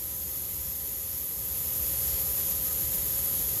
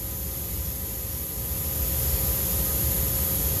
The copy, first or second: first